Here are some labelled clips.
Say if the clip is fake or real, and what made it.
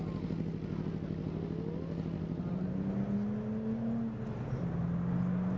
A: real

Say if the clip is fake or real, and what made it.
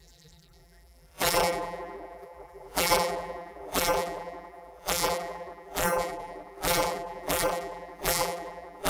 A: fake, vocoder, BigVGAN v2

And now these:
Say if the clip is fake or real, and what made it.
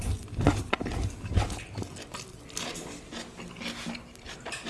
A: real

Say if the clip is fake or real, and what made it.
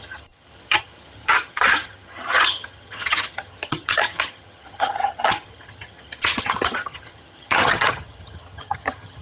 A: fake, vocoder, HiFi-GAN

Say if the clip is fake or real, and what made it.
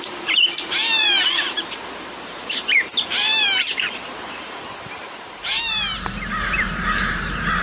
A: fake, vocoder, BigVGAN v2